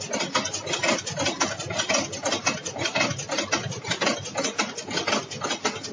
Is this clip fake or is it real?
real